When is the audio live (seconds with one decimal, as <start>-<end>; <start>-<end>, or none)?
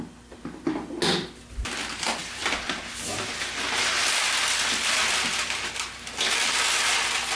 0.0-7.4